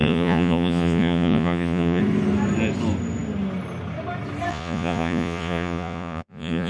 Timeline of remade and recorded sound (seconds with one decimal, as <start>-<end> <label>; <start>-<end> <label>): 0.0-2.0 remade; 2.0-4.5 recorded; 4.5-6.7 remade